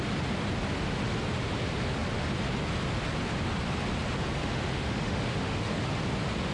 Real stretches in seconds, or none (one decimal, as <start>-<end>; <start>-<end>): 0.0-4.4; 5.9-6.5